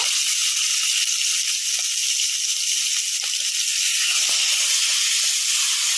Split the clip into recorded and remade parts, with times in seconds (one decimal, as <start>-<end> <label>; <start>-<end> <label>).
0.0-6.0 recorded